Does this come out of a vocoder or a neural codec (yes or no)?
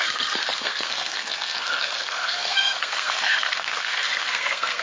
yes